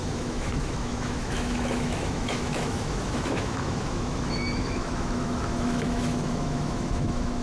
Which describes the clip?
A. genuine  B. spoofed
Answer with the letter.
B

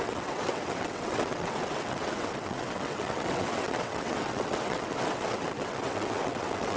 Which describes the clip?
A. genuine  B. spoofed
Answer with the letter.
B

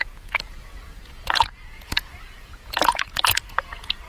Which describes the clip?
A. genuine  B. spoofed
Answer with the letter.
B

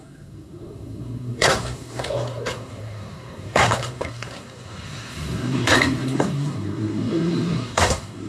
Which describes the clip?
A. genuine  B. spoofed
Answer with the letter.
B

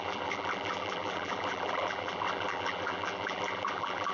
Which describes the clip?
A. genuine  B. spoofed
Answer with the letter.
B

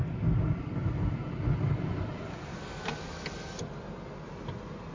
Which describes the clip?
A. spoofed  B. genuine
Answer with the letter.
B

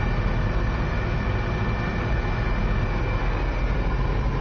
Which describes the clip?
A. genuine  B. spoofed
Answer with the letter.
A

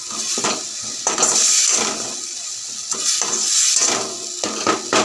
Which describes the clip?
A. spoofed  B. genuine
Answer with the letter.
B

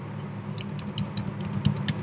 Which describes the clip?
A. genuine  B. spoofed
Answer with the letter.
A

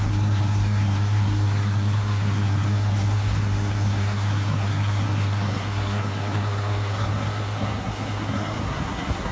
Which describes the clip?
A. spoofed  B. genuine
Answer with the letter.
A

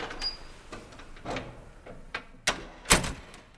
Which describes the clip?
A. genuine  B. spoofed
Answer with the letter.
A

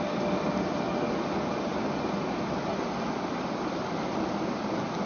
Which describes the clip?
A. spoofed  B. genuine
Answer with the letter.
B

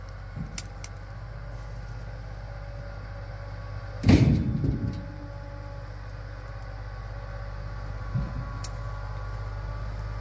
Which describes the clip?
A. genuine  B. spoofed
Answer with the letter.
A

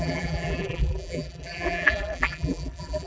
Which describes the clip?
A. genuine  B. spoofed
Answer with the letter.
B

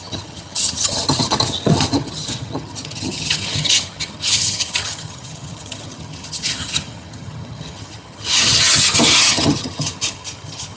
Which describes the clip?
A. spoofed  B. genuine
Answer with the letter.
A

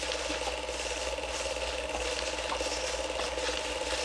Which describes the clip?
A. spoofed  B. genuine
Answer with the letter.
B